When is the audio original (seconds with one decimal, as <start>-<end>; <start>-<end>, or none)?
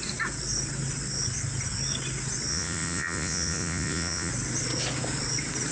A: 0.0-2.5; 4.3-5.7